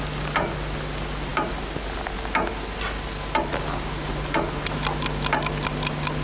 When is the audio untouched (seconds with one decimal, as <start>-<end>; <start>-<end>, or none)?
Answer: 0.0-6.2